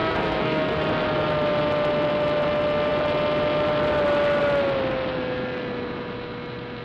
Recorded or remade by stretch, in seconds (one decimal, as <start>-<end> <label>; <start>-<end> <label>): 0.0-0.8 remade; 0.8-6.8 recorded